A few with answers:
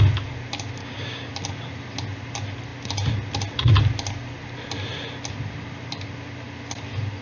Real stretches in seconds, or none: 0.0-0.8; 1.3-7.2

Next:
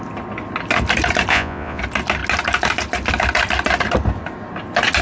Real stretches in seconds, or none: 0.0-1.3; 1.8-5.0

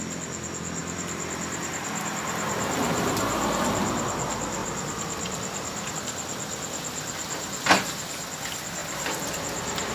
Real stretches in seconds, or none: 0.0-0.8; 2.0-4.6; 5.9-9.9